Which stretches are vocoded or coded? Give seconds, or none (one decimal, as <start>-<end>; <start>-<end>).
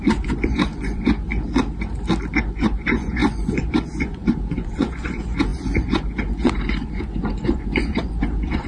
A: 0.0-1.3; 2.4-8.7